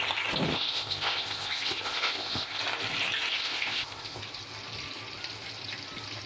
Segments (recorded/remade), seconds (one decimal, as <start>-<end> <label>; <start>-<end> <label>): 0.0-0.5 recorded; 0.5-2.6 remade; 2.6-3.3 recorded; 3.3-4.2 remade; 4.2-6.3 recorded